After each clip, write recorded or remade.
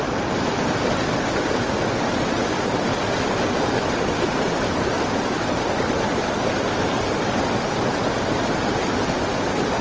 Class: recorded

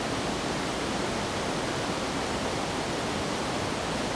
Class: recorded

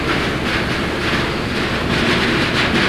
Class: recorded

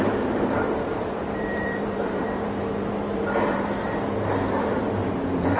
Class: remade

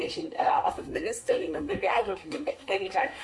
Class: remade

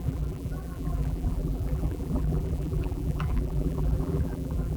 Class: remade